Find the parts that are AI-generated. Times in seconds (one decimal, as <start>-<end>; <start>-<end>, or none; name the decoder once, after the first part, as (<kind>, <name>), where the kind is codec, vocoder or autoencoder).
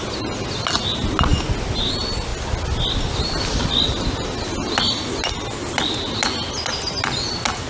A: none